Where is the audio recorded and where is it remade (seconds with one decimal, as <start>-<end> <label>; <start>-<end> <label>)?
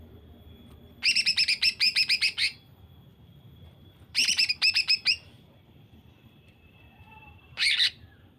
0.0-3.1 recorded; 3.1-7.9 remade; 7.9-8.4 recorded